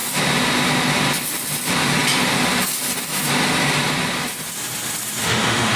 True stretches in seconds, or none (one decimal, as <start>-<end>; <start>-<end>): 0.0-5.2